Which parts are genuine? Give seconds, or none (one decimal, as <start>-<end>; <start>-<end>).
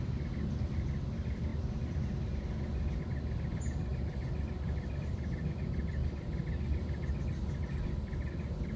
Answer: 0.0-8.8